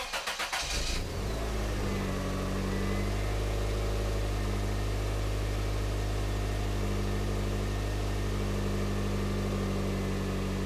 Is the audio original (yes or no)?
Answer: yes